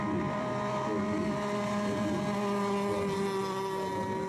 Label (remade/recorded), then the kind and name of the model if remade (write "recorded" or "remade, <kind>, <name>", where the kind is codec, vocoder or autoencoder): recorded